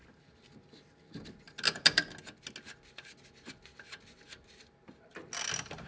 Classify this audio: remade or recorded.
recorded